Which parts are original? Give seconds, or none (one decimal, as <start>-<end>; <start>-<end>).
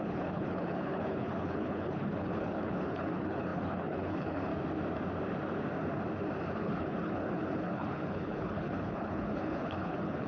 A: 4.5-6.6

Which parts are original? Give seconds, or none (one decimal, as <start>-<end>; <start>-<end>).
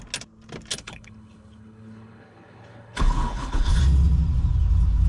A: 0.0-0.7; 3.8-5.1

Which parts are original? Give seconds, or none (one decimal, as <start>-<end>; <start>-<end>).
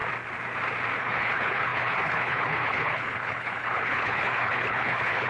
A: 0.0-1.0